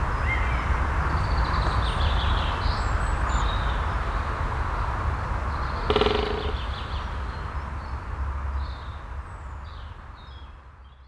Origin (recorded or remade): recorded